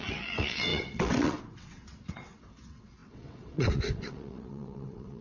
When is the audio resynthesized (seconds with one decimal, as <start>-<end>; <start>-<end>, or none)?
0.0-5.2